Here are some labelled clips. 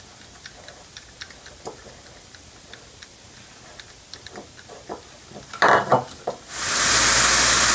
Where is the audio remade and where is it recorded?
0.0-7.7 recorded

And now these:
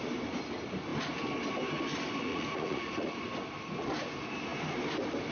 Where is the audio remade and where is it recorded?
0.0-2.3 recorded; 2.3-3.1 remade; 3.1-5.3 recorded

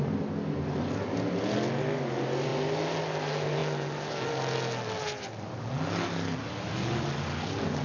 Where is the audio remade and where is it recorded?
0.0-7.8 recorded

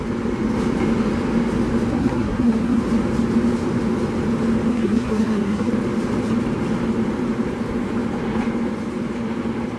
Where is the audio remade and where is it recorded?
0.0-1.9 recorded; 1.9-2.8 remade; 2.8-4.7 recorded; 4.7-5.7 remade; 5.7-9.8 recorded